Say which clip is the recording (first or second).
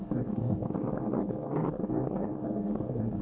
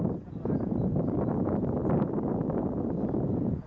second